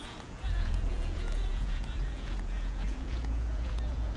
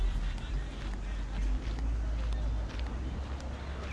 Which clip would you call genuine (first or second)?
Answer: second